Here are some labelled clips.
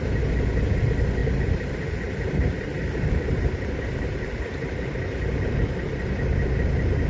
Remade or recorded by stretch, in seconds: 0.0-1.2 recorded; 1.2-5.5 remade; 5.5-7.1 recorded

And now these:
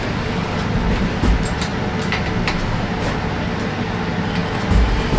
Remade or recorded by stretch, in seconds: 0.0-5.2 recorded

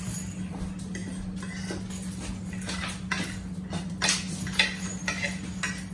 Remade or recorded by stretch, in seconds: 0.0-5.9 recorded

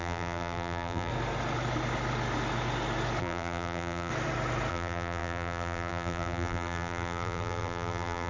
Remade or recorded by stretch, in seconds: 0.0-1.1 remade; 1.1-3.2 recorded; 3.2-4.1 remade; 4.1-4.7 recorded; 4.7-8.3 remade

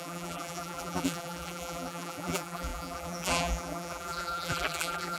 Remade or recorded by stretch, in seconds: 0.0-5.2 remade

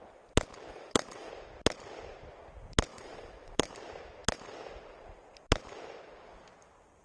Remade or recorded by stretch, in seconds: 0.0-0.7 recorded; 0.7-1.3 remade; 1.3-2.9 recorded; 2.9-3.7 remade; 3.7-7.0 recorded

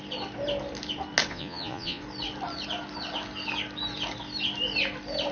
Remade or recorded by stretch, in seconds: 0.0-1.3 recorded; 1.3-2.0 remade; 2.0-5.3 recorded

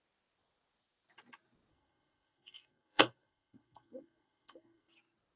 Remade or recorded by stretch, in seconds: 0.0-1.7 recorded; 1.7-4.9 remade; 4.9-5.4 recorded